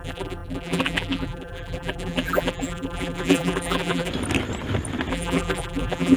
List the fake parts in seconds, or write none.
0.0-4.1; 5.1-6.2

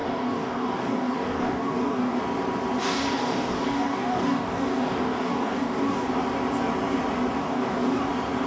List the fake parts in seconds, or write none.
0.0-2.2; 2.8-6.1; 7.4-8.1